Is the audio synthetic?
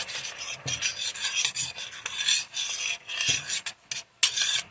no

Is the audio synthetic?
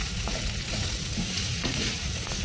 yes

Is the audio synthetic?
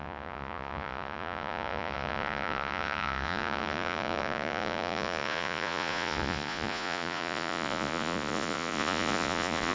yes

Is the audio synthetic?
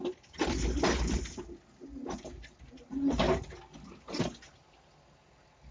no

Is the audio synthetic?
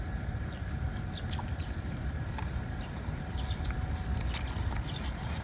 no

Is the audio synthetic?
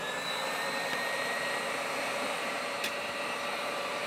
yes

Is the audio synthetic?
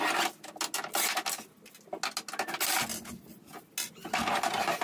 no